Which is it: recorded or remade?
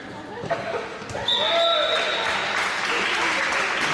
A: recorded